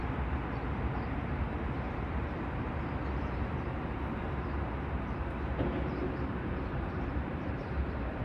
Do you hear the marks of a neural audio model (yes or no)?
yes